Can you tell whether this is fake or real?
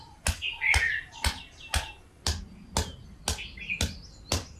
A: real